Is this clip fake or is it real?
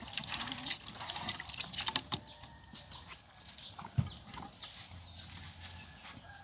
real